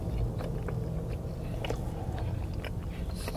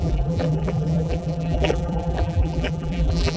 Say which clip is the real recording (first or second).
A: first